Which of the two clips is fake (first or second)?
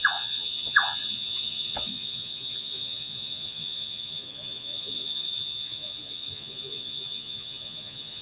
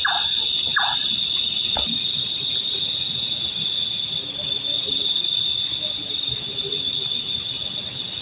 first